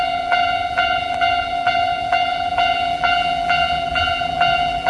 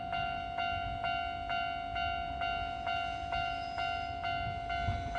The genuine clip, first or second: second